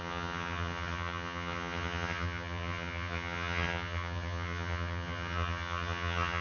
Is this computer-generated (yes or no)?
yes